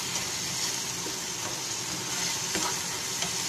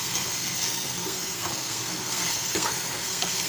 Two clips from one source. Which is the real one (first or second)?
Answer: first